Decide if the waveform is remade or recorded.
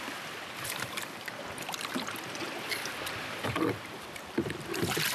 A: remade